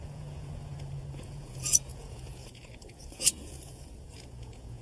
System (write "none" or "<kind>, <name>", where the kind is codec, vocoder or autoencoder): vocoder, Vocos